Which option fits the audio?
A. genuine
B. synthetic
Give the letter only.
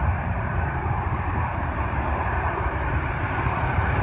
B